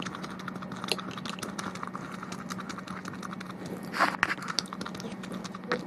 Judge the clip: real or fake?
real